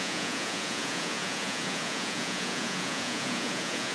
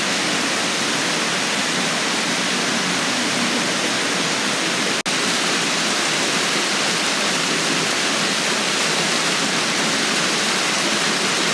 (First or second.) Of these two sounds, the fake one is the first